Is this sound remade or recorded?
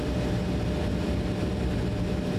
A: recorded